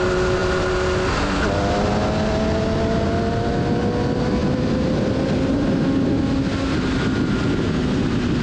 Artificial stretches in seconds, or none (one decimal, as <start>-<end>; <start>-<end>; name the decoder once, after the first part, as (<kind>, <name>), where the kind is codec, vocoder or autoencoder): none